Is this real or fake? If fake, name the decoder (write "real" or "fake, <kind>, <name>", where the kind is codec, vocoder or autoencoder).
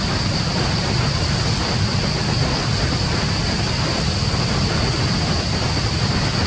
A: real